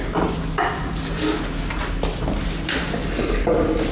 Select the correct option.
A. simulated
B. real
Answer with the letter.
B